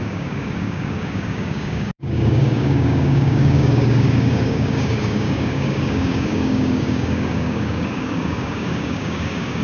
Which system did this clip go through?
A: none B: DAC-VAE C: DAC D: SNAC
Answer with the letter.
C